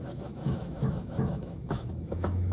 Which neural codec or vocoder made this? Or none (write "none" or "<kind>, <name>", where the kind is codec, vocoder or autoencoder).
autoencoder, DAC-VAE